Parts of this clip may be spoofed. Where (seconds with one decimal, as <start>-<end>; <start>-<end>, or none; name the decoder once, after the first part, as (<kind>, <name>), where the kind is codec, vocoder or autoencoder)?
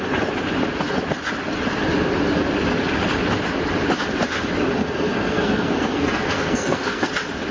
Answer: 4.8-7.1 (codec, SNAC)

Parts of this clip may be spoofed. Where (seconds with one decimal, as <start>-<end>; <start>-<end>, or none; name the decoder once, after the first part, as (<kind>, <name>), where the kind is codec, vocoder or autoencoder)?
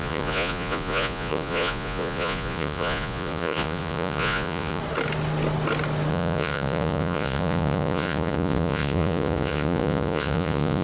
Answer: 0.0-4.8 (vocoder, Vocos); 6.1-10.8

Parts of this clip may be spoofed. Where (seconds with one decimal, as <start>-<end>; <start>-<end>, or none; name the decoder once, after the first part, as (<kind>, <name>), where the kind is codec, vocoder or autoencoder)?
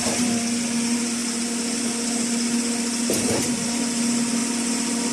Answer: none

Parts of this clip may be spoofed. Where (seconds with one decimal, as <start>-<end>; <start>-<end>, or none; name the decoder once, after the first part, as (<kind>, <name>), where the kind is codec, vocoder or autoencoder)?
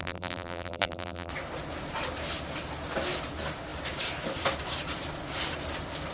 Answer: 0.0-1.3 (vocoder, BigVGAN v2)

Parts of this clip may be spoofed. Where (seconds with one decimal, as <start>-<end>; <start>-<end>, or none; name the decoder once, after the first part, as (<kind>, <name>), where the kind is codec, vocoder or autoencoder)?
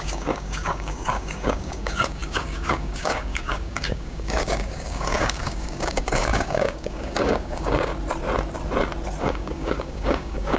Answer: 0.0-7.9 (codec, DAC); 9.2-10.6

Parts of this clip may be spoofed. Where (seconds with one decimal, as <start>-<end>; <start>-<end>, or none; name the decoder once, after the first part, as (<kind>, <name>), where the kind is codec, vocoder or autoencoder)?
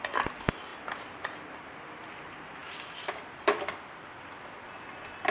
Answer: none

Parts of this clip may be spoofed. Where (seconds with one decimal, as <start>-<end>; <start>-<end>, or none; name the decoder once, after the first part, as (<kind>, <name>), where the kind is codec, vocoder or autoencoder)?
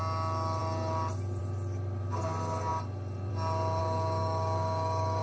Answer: 3.8-5.2 (codec, DAC)